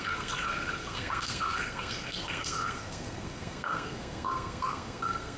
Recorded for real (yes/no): no